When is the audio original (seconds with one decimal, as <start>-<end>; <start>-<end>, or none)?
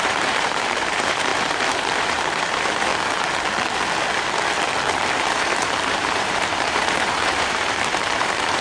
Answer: 2.9-5.1